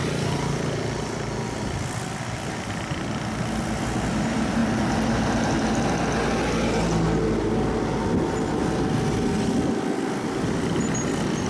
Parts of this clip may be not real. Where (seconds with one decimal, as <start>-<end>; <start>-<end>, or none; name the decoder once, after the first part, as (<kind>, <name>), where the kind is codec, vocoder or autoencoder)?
none